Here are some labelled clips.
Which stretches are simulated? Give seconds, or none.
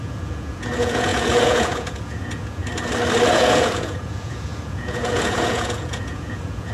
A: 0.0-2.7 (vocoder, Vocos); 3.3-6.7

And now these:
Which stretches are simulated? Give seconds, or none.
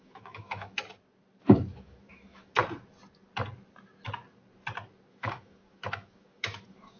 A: 0.0-0.8 (autoencoder, DAC-VAE); 1.4-2.6; 5.1-7.0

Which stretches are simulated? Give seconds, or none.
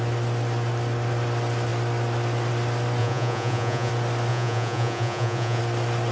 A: 3.0-3.9 (vocoder, Vocos); 4.3-5.6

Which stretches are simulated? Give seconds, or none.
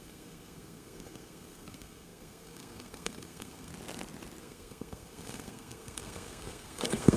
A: 0.0-3.7 (codec, SNAC); 4.4-7.2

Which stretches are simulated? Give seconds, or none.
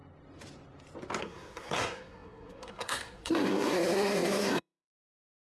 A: 1.2-5.6 (codec, SNAC)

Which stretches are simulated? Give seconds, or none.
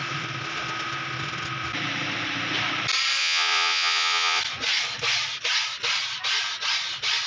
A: 3.2-4.4 (vocoder, Vocos)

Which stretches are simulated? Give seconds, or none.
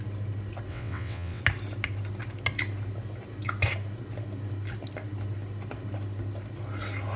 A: 0.7-1.4 (vocoder, WaveNeXt)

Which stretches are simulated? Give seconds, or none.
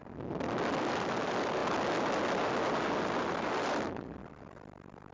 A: 0.8-1.6 (vocoder, BigVGAN v2); 3.2-5.1